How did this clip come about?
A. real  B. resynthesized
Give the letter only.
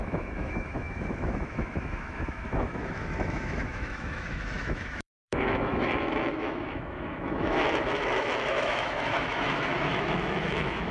B